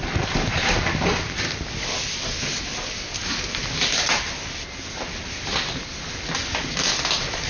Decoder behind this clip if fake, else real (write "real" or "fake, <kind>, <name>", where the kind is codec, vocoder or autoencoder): real